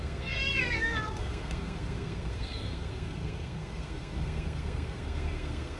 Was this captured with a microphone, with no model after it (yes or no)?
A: no